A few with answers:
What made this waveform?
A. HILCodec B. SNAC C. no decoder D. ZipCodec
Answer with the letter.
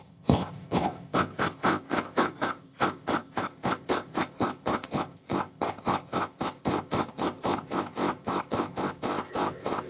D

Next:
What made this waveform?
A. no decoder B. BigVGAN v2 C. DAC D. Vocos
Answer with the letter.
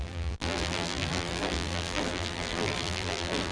B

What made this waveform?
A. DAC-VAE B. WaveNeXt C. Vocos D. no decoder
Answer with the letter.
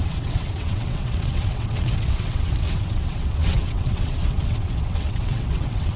B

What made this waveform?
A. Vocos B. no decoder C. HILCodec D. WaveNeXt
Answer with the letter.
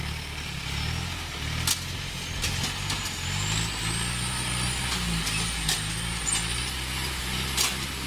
B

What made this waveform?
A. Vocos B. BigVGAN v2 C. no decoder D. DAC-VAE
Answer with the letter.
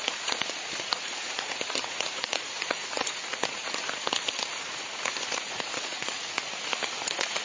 A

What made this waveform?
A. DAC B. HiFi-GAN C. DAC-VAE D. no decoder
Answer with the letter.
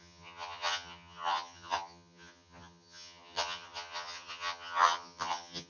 B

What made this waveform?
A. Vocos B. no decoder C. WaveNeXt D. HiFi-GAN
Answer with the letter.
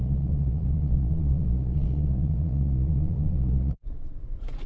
A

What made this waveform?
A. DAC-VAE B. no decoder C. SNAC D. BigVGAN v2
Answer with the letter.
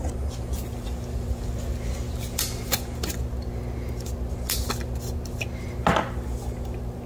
B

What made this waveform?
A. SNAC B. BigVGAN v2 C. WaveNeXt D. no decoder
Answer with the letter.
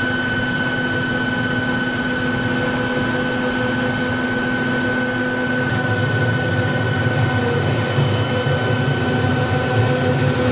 D